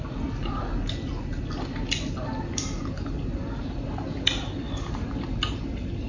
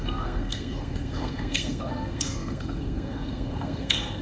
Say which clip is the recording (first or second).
first